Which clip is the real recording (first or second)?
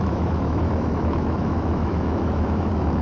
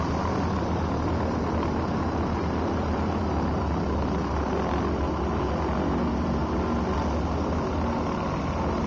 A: second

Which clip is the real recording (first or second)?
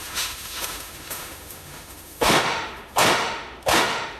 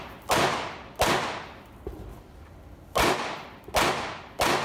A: second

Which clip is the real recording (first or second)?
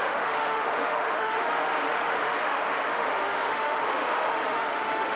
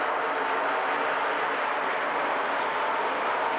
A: second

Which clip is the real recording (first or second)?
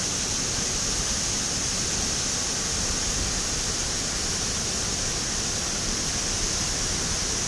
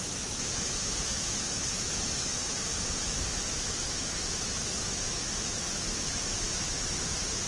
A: first